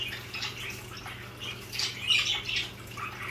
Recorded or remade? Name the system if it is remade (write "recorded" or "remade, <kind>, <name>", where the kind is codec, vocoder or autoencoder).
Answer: recorded